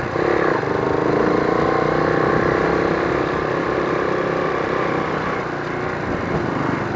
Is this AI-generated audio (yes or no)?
no